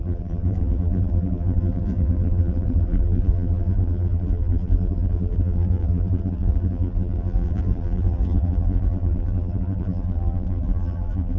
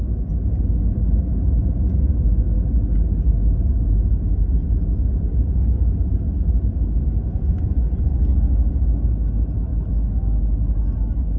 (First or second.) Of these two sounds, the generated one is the first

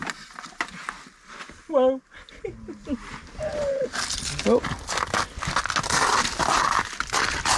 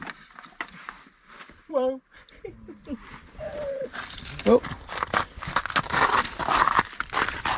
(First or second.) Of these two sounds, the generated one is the second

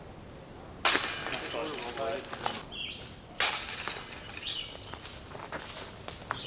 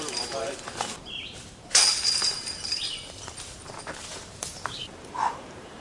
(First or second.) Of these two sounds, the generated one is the second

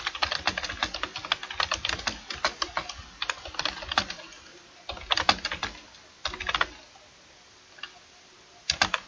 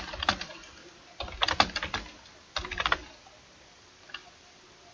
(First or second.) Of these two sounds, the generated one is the second